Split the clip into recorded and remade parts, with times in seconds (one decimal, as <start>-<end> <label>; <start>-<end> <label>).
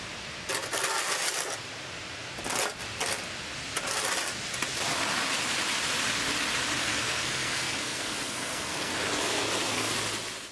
0.0-6.8 recorded; 6.8-9.9 remade; 9.9-10.5 recorded